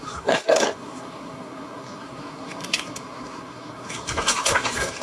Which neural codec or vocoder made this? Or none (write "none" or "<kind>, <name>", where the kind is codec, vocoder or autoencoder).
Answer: codec, SNAC